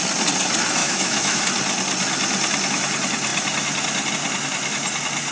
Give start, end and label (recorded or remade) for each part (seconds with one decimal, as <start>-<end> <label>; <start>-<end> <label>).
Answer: 0.0-0.8 recorded; 0.8-1.4 remade; 1.4-5.3 recorded